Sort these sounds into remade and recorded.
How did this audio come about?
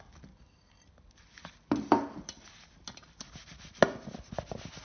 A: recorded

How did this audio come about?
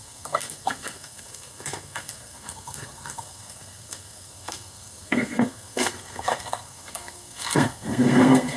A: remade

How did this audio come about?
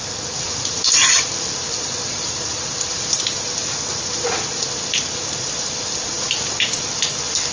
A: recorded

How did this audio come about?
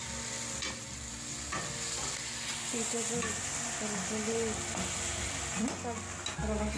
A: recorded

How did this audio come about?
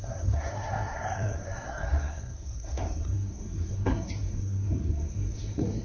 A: remade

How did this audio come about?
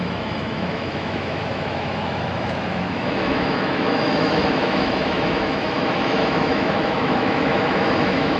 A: remade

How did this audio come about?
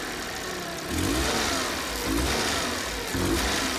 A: recorded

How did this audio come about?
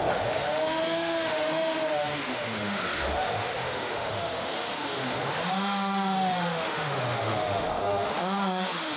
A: remade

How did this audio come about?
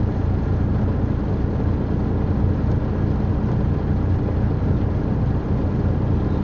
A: recorded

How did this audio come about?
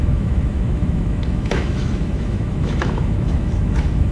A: remade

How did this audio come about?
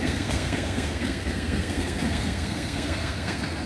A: remade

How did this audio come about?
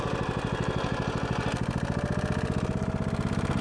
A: recorded